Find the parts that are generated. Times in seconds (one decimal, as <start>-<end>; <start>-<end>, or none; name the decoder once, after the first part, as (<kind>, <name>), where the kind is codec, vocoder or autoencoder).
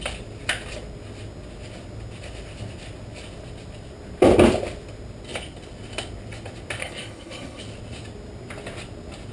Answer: 6.8-7.6 (codec, HILCodec)